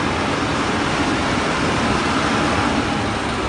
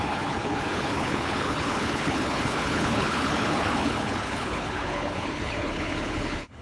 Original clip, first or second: first